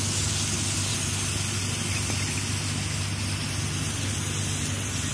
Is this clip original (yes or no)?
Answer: yes